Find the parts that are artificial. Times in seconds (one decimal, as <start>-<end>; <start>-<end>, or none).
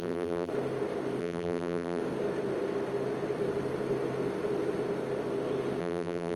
0.0-0.5; 1.2-2.0; 5.8-6.4